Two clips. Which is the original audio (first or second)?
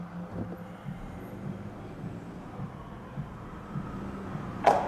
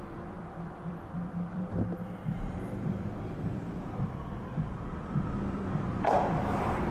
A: first